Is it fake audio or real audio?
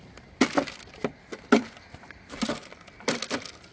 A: real